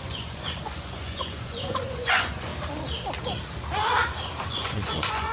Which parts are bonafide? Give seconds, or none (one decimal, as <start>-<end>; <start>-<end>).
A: 2.5-4.5